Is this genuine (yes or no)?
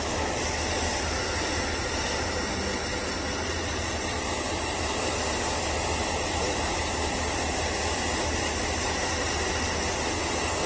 yes